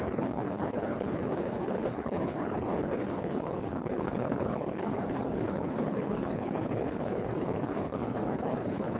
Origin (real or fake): fake